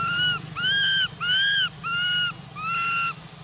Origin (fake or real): real